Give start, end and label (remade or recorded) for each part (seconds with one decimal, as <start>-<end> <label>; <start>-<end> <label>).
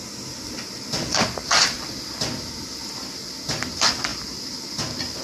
0.0-1.4 recorded; 1.4-2.0 remade; 2.0-4.1 recorded; 4.1-4.8 remade; 4.8-5.2 recorded